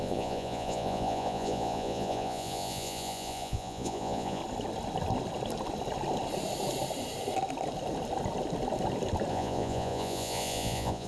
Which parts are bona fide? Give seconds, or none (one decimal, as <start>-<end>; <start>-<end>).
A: 4.4-9.3